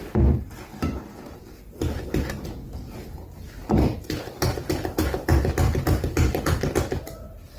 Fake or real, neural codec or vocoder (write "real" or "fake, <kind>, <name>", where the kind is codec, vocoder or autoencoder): real